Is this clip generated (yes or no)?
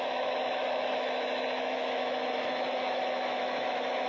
yes